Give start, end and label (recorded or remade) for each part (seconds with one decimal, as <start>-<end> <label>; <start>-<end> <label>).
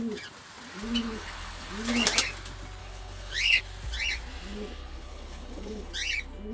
0.0-1.0 recorded; 1.0-1.7 remade; 1.7-2.8 recorded; 2.8-3.6 remade; 3.6-4.8 recorded; 4.8-5.9 remade; 5.9-6.5 recorded